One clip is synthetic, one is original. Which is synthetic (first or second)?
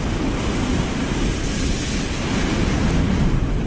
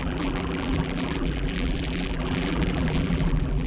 second